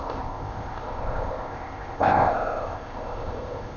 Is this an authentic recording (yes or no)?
no